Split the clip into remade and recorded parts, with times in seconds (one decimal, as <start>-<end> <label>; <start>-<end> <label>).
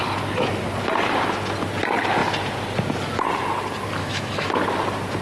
0.0-4.0 recorded; 4.0-4.5 remade; 4.5-5.2 recorded